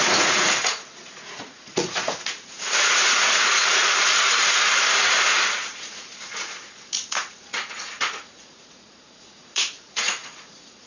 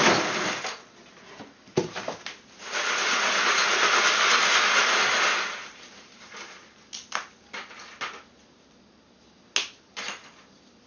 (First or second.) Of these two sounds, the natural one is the second